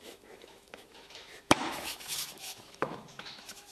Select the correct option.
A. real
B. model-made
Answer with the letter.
B